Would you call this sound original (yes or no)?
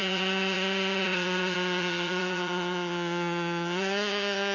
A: no